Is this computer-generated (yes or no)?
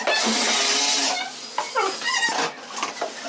no